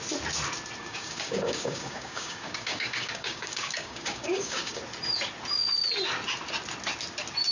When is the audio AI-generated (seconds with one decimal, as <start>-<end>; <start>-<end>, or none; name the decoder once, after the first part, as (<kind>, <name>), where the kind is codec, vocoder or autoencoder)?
0.8-4.8 (codec, DAC)